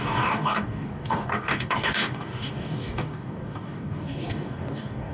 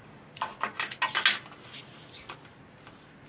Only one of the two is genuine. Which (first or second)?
second